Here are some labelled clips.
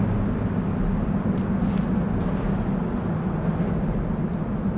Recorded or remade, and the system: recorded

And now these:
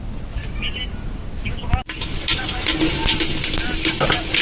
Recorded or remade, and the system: recorded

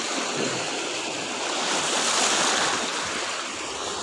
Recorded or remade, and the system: recorded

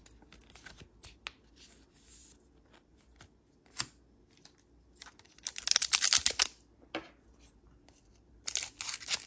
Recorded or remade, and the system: recorded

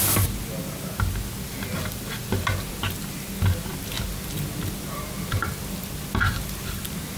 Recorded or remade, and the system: recorded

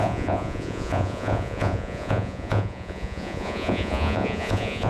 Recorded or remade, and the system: remade, vocoder, Vocos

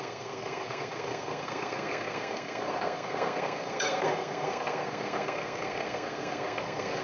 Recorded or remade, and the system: remade, codec, SNAC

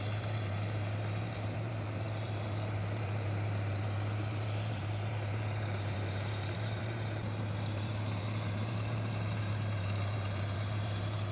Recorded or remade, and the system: remade, vocoder, BigVGAN v2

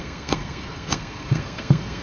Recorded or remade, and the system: remade, codec, SNAC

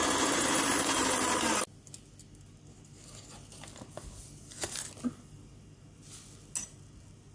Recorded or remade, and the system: recorded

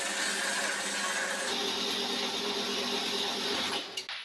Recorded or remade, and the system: recorded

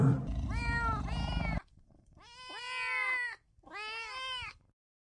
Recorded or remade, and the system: recorded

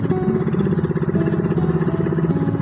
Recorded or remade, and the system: recorded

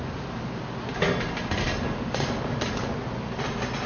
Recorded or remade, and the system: recorded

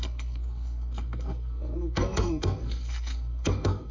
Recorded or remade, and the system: remade, codec, SNAC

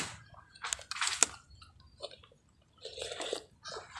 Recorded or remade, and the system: recorded